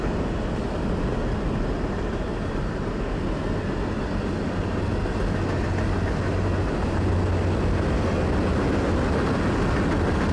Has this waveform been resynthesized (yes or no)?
no